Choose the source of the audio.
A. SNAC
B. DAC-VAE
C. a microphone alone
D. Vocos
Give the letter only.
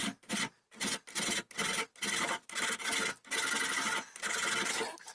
C